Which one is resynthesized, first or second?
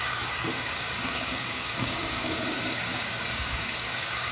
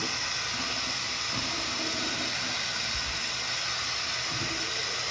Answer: first